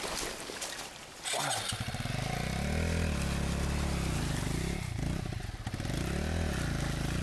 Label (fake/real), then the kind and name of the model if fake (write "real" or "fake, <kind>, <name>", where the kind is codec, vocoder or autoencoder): real